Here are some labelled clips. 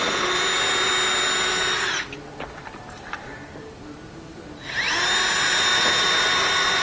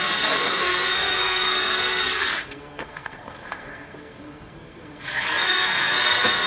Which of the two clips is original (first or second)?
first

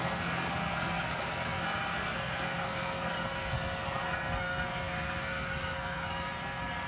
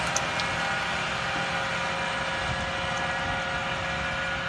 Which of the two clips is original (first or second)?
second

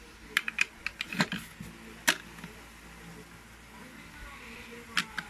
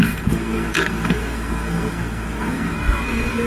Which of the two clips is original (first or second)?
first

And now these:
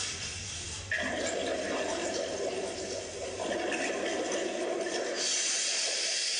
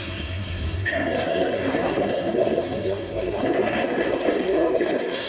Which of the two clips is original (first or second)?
first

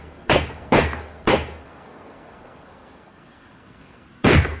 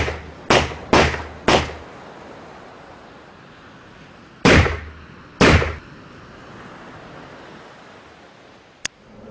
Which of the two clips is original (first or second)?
second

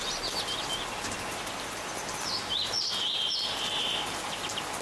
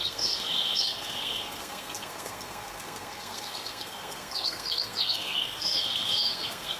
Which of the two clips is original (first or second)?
first